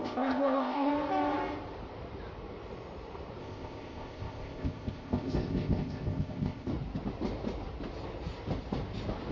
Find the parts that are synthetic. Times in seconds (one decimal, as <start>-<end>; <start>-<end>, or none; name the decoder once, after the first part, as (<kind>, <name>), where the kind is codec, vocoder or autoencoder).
0.0-0.9 (codec, ZipCodec); 3.4-6.7